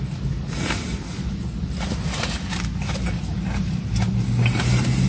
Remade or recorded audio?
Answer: recorded